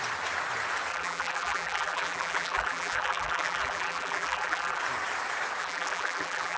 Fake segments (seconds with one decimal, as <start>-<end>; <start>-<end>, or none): 0.9-4.8; 5.6-6.6